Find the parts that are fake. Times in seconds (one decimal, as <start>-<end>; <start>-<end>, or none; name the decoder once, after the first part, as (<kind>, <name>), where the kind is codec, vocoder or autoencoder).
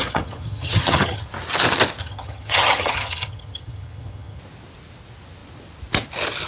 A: 0.0-1.3 (vocoder, HiFi-GAN); 2.0-4.4